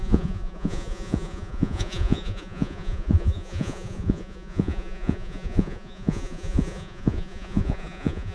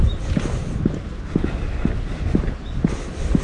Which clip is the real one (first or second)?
second